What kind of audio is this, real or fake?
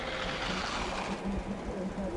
real